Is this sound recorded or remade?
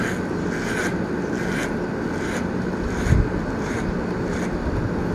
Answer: recorded